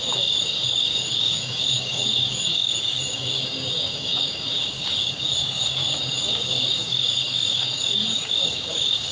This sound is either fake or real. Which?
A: fake